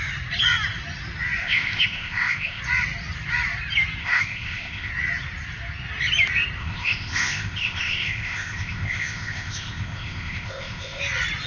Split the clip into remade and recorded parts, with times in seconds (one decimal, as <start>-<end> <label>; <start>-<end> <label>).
0.0-1.4 recorded; 1.4-2.6 remade; 2.6-4.0 recorded; 4.0-4.9 remade; 4.9-6.6 recorded; 6.6-11.0 remade; 11.0-11.5 recorded